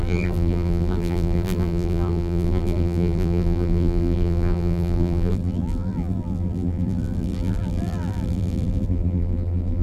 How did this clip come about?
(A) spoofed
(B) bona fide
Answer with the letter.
A